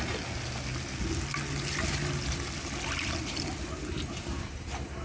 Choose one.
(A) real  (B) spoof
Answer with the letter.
A